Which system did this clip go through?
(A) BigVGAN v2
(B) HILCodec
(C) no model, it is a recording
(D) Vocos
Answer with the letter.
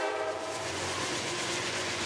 D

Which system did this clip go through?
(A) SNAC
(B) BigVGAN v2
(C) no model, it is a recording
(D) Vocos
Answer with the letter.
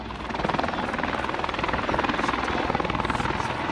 C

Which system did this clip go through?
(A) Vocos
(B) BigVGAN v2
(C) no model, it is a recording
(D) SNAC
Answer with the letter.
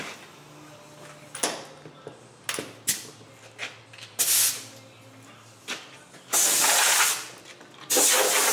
C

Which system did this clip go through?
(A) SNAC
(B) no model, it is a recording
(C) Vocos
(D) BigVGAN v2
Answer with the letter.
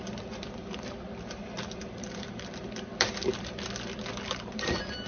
D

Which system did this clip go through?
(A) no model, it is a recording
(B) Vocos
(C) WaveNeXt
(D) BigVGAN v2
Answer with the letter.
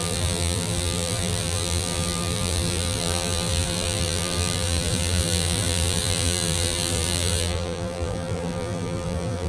D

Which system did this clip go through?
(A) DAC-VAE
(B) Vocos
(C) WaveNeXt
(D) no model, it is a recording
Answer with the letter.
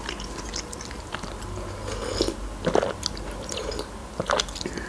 D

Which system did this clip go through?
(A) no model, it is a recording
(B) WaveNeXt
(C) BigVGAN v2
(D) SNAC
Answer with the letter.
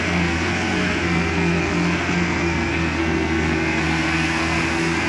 D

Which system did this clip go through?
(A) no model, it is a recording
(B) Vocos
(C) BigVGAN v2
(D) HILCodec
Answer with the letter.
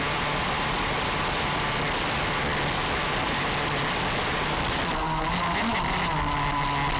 A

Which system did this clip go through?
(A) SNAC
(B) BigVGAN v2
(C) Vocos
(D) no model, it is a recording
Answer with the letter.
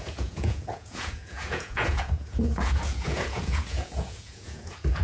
C